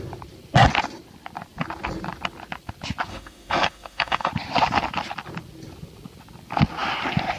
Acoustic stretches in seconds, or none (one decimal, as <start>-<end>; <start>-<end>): 0.0-3.1; 4.3-7.4

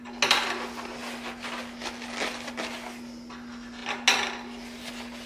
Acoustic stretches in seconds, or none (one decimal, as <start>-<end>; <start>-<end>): 0.0-5.3

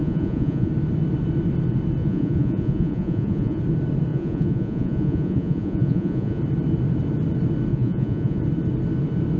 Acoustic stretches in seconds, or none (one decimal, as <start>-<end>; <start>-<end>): 0.7-2.0; 3.6-4.1; 6.4-7.7; 8.4-9.4

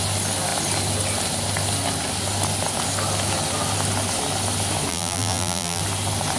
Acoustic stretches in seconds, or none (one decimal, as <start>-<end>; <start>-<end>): 0.0-4.9; 5.8-6.4